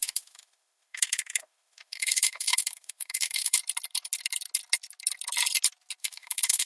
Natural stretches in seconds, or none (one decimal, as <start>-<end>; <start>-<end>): 3.6-6.0